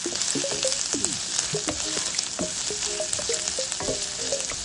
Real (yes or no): yes